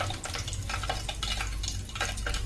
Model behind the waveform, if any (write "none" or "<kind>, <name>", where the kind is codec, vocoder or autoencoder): none